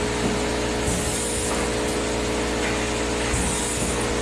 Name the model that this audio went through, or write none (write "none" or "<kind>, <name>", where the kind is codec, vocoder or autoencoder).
none